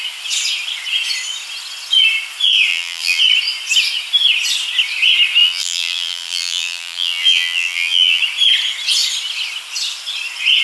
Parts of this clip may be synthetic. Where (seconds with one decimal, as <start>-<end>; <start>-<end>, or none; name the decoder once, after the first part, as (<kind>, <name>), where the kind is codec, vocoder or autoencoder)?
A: 2.7-3.2 (vocoder, BigVGAN v2); 5.4-8.2